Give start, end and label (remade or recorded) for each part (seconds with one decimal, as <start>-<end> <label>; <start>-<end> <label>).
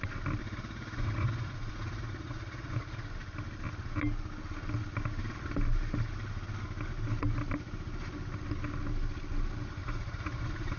0.0-0.4 recorded; 0.4-3.1 remade; 3.1-9.8 recorded; 9.8-10.8 remade